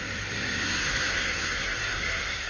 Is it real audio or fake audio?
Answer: fake